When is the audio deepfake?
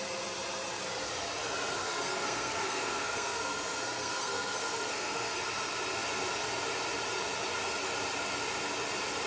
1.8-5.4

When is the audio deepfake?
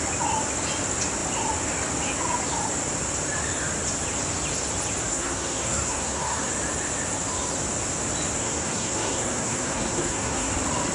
5.1-6.5; 8.4-10.5